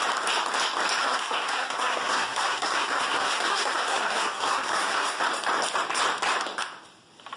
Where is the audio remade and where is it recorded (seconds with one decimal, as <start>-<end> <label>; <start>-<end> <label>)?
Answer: 0.0-1.0 recorded; 1.0-5.2 remade; 5.2-7.4 recorded